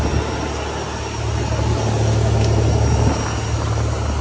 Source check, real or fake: real